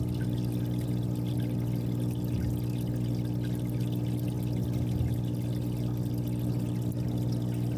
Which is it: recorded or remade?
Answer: recorded